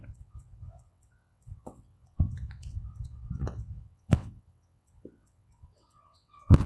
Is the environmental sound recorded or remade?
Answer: remade